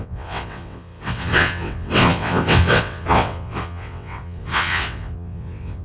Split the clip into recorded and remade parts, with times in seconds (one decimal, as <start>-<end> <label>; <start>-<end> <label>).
0.0-5.8 remade